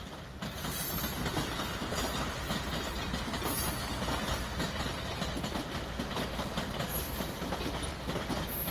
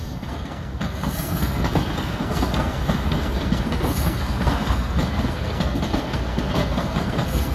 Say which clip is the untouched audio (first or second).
first